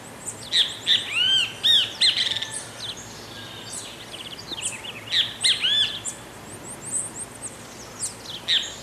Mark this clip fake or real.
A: real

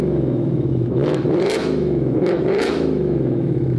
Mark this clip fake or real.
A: fake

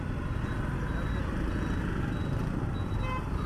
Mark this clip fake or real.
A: real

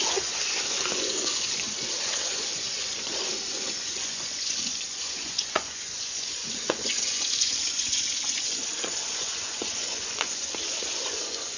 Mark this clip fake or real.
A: fake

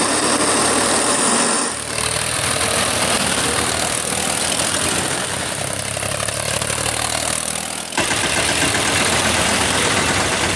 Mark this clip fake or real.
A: fake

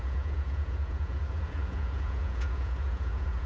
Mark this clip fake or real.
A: fake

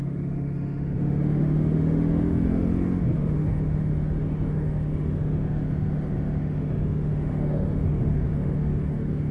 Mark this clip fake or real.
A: fake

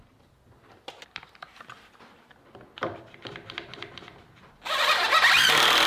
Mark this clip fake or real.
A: real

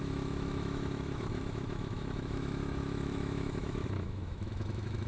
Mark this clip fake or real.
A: fake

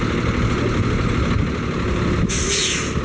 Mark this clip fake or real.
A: real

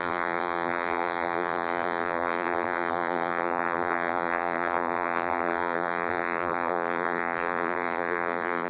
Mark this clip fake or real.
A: fake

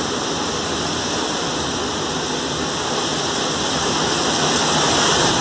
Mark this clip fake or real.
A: real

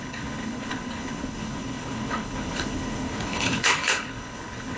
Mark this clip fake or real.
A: fake